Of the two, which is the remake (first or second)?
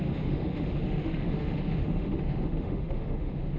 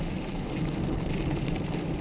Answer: first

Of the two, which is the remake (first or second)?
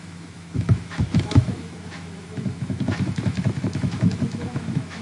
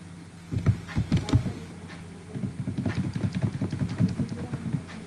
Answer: first